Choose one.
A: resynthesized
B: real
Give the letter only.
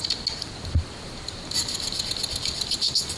B